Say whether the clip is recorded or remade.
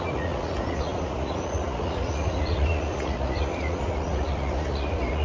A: remade